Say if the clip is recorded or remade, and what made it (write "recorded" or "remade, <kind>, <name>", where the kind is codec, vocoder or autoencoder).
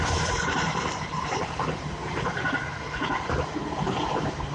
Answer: remade, vocoder, BigVGAN v2